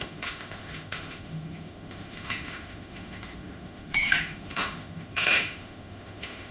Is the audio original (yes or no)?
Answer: no